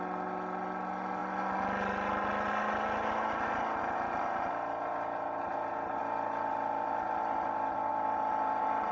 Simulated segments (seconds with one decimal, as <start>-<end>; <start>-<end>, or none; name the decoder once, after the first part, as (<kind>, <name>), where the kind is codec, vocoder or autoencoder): none